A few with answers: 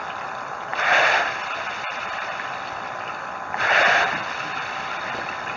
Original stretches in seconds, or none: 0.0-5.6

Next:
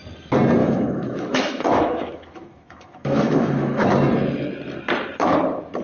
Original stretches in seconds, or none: 0.0-0.6; 3.9-5.8

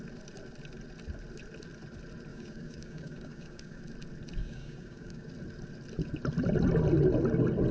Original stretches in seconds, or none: 0.0-2.3; 3.8-4.4; 5.3-7.7

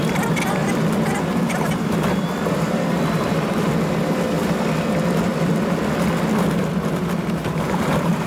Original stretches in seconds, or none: 0.0-0.6; 3.7-7.4

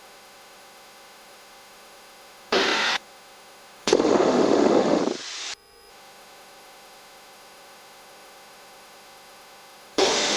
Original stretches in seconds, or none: 5.0-5.9

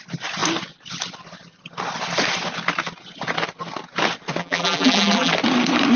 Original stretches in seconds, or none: 0.0-4.4; 5.3-6.0

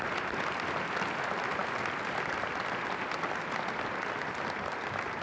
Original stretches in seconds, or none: 0.0-5.2

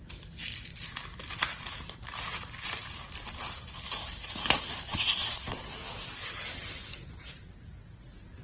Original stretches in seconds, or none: 0.0-4.9; 5.6-8.4